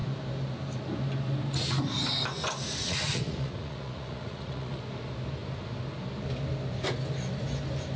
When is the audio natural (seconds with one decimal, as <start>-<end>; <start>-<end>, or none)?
0.0-2.8; 4.8-8.0